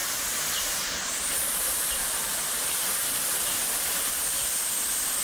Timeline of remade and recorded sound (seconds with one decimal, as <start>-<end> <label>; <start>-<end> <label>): 0.0-2.2 remade; 2.2-5.2 recorded

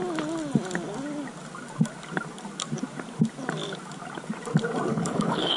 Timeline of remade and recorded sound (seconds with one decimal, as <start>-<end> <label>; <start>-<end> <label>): 0.0-4.9 recorded; 4.9-5.6 remade